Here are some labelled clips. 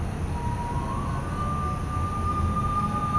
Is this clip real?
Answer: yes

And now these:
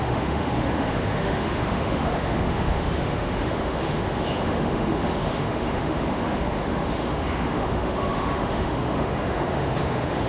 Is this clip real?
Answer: no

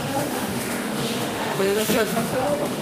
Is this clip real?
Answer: no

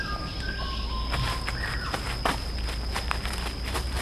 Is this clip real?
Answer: yes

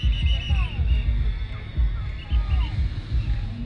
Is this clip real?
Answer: yes